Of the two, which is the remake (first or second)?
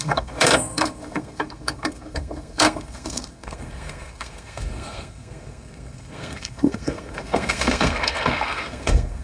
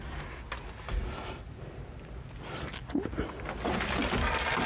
first